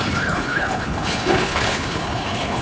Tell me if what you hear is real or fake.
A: fake